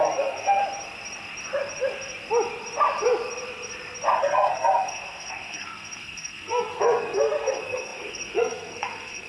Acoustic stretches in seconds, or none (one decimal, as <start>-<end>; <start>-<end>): 0.6-4.2